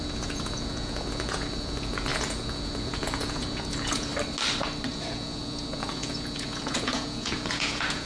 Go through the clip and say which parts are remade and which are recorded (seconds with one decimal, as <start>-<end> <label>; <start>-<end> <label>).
0.0-4.1 remade; 4.1-4.9 recorded; 4.9-8.1 remade